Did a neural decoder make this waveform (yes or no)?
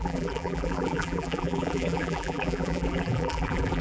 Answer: yes